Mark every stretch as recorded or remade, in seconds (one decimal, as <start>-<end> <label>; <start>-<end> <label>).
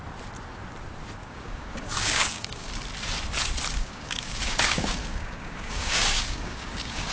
0.0-1.2 recorded; 1.2-2.7 remade; 2.7-3.7 recorded; 3.7-7.1 remade